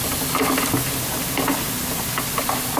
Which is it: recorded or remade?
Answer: recorded